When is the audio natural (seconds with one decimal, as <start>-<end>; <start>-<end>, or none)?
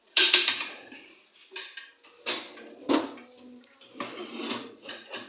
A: 1.3-4.5